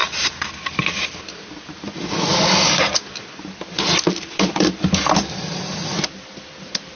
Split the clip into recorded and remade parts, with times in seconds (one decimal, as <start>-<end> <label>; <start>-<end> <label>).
0.0-7.0 recorded